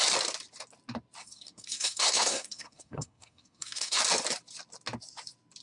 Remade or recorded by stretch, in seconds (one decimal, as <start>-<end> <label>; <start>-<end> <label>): 0.0-1.2 recorded; 1.2-4.0 remade; 4.0-5.6 recorded

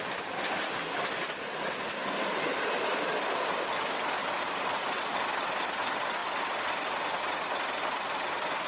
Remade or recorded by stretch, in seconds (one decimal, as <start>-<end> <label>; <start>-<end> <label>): 0.0-8.7 recorded

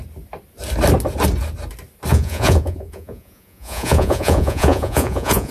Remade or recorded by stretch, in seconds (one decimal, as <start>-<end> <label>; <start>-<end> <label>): 0.0-2.1 recorded; 2.1-5.5 remade

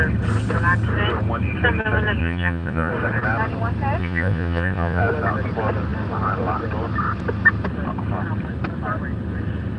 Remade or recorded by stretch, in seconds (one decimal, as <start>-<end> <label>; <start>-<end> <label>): 0.0-2.2 recorded; 2.2-2.9 remade; 2.9-4.0 recorded; 4.0-5.0 remade; 5.0-9.8 recorded